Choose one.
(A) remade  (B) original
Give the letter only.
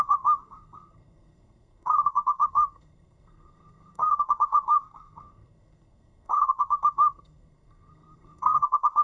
A